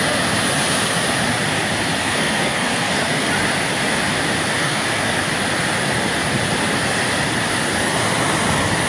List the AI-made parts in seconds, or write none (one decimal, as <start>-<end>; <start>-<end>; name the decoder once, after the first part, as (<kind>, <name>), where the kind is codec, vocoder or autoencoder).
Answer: 2.0-3.3 (codec, SNAC); 4.6-5.1